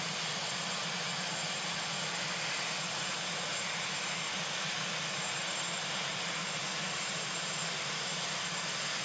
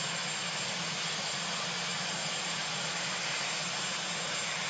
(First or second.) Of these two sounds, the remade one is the first